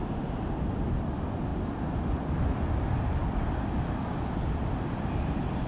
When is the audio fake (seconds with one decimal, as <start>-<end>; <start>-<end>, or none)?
none